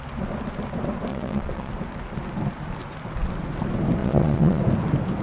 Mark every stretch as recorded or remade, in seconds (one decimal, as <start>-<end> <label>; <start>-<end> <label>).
0.0-1.1 recorded; 1.1-1.7 remade; 1.7-4.0 recorded; 4.0-4.6 remade; 4.6-5.2 recorded